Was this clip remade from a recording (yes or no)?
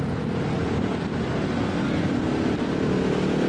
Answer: no